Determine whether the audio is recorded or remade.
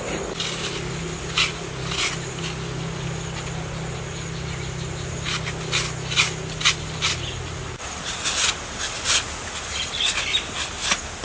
recorded